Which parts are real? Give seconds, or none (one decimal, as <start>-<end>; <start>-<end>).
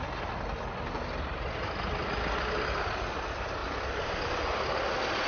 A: 0.0-3.6